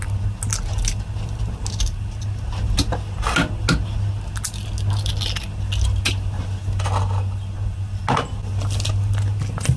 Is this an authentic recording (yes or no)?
yes